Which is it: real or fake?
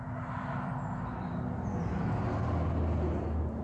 real